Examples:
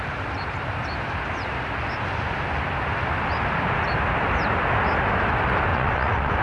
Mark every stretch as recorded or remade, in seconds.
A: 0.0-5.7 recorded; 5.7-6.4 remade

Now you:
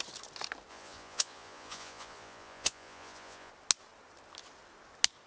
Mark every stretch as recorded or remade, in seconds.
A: 0.0-0.7 recorded; 0.7-3.5 remade; 3.5-5.3 recorded